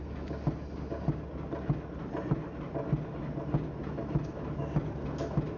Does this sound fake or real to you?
real